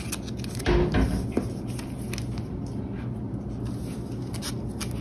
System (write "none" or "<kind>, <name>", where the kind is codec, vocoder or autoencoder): none